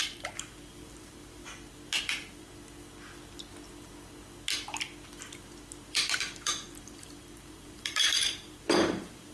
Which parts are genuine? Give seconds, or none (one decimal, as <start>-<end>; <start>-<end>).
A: 1.4-2.0; 2.5-5.8